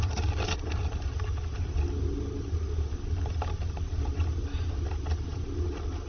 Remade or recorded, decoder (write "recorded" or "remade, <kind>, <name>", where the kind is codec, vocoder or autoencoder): recorded